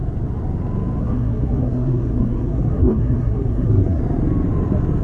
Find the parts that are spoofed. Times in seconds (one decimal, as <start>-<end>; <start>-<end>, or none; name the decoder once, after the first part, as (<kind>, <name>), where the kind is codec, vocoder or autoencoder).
1.0-4.0 (codec, SNAC)